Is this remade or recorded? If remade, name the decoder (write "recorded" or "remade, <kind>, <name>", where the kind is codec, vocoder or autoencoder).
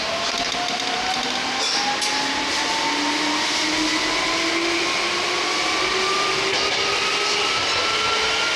recorded